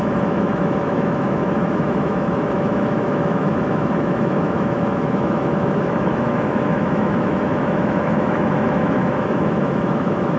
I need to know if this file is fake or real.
fake